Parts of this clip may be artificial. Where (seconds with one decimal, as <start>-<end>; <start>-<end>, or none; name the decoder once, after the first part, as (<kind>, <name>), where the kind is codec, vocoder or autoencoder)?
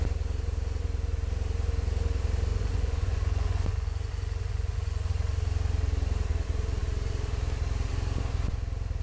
2.5-5.1 (vocoder, Vocos)